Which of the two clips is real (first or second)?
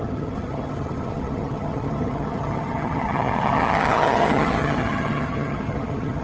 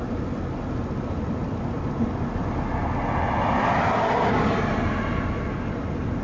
second